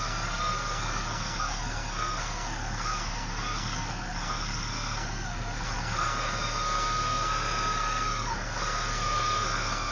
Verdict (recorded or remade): remade